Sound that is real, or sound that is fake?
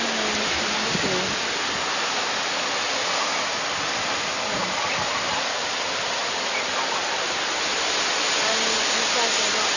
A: real